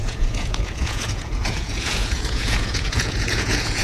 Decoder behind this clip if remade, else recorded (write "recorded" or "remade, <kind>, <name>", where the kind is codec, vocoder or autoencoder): remade, vocoder, Vocos